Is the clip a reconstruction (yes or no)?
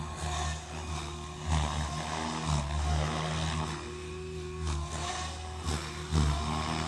no